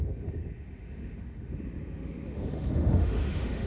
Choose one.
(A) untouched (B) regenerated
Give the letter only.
B